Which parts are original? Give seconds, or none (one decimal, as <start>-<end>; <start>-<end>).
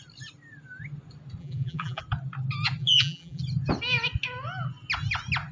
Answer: 0.0-1.4; 2.0-2.8; 3.4-5.5